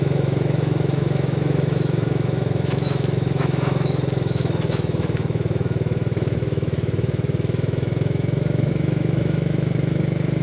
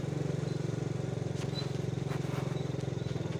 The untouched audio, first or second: second